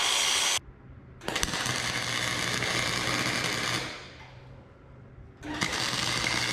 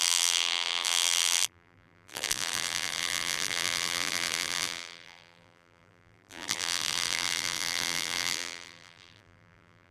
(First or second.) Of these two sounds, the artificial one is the second